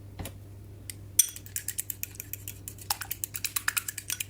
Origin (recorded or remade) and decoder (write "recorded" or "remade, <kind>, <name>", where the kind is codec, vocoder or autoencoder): recorded